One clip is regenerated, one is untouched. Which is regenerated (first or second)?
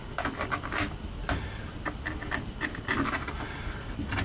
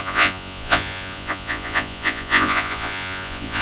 second